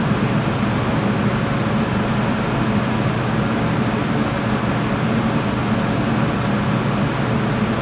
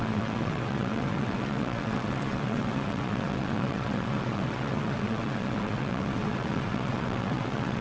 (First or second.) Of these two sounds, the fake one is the second